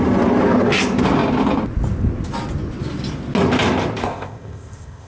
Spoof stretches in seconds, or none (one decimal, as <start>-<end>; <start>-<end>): 4.0-5.1